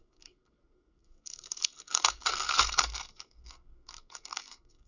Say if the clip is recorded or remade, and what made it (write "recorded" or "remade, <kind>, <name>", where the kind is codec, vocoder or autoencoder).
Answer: remade, codec, SNAC